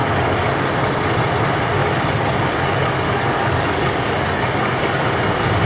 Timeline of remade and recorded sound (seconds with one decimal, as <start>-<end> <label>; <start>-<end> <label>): 0.0-0.7 remade; 0.7-1.8 recorded; 1.8-5.2 remade; 5.2-5.7 recorded